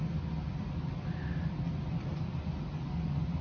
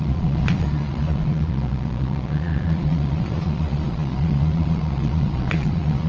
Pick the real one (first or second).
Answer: first